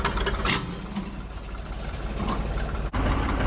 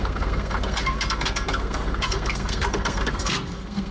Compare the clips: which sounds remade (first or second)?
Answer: second